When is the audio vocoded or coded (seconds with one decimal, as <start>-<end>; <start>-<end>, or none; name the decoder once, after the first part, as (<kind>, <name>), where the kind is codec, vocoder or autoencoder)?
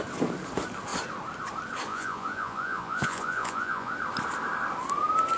1.9-3.9 (vocoder, Vocos)